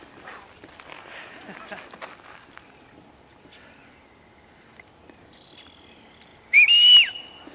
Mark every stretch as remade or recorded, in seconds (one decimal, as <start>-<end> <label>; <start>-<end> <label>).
0.0-7.5 recorded